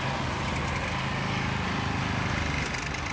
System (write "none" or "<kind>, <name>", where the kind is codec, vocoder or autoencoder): none